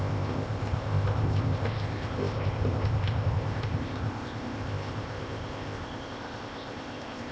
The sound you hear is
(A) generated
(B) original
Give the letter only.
A